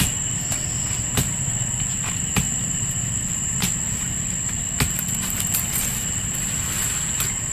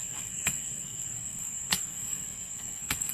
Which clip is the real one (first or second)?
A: first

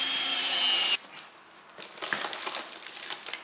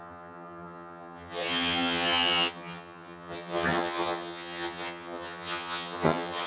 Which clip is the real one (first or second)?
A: first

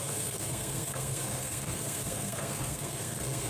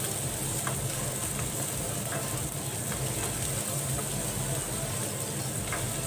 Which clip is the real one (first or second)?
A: second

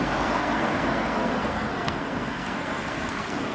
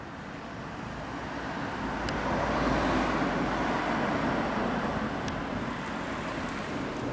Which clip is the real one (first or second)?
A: second